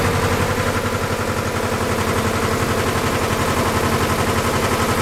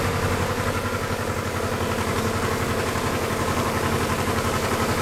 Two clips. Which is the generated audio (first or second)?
second